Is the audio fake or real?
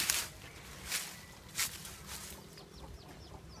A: real